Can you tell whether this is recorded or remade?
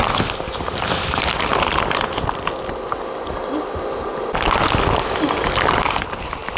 recorded